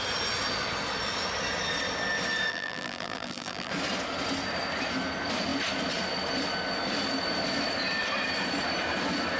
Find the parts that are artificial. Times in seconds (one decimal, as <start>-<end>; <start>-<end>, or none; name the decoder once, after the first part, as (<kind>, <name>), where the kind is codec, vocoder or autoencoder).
2.5-3.7 (vocoder, BigVGAN v2)

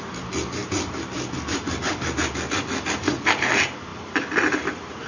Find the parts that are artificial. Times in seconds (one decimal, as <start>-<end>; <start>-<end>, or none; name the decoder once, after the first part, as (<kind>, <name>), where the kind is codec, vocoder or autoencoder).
0.6-2.6 (vocoder, BigVGAN v2)

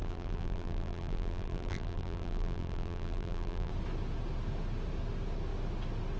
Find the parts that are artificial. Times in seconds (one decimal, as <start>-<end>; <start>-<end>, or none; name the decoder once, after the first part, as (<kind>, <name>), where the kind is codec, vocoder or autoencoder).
0.0-3.7 (vocoder, BigVGAN v2)

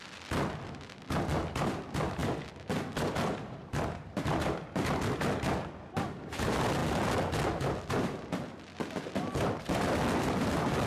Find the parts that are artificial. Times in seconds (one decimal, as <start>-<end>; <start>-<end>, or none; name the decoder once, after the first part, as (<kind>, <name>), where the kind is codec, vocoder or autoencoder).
0.0-6.8 (vocoder, BigVGAN v2); 7.9-10.9

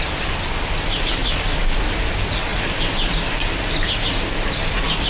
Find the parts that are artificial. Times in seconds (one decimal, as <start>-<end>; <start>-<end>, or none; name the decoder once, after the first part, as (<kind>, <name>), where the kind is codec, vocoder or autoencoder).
none

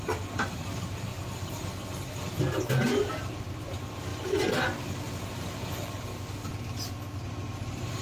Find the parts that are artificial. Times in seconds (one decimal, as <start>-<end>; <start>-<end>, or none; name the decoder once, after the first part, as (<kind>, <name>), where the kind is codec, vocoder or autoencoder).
0.0-1.1 (vocoder, BigVGAN v2); 3.2-4.1; 4.8-6.1; 7.6-8.0

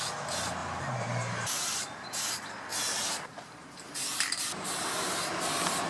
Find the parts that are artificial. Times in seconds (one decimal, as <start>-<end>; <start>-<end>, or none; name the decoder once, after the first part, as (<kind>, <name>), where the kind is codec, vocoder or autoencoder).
0.6-2.3 (vocoder, BigVGAN v2); 2.7-5.3